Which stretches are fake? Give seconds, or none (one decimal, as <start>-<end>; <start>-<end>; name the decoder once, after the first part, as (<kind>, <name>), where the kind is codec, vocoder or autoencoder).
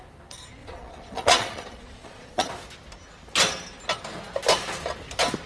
0.6-2.5 (vocoder, Vocos)